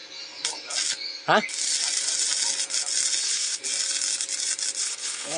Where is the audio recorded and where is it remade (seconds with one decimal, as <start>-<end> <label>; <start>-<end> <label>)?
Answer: 0.0-3.2 recorded; 3.2-3.6 remade; 3.6-4.8 recorded; 4.8-5.4 remade